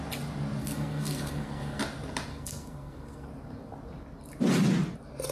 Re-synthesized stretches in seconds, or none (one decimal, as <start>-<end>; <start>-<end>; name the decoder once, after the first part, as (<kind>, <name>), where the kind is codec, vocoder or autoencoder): 0.6-1.8 (codec, SNAC); 2.3-3.3